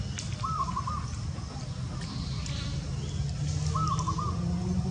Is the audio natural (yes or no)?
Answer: yes